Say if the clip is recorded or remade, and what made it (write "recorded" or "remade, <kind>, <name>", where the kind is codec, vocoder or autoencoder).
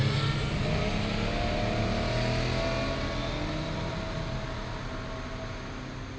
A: recorded